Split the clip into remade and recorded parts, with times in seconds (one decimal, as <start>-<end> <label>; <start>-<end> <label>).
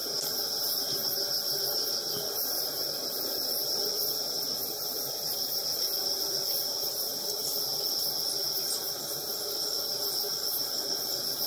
0.0-11.5 recorded